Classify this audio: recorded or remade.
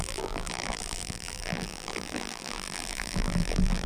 remade